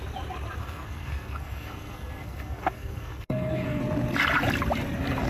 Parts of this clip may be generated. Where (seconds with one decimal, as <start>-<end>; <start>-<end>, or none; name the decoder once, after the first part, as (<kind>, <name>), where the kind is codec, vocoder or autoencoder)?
0.6-3.8 (codec, SNAC)